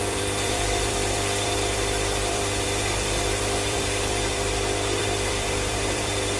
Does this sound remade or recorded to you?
remade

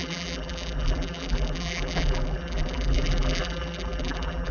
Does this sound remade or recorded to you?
remade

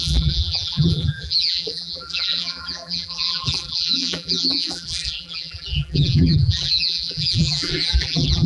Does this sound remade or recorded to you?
remade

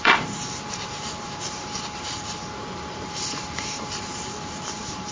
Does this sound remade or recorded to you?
remade